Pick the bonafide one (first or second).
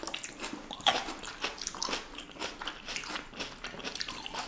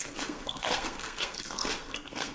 first